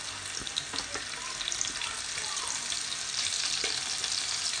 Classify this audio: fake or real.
real